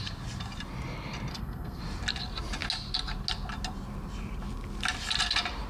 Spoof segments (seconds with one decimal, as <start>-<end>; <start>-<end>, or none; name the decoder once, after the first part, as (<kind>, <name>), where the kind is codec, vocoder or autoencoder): 1.3-1.8 (codec, SNAC)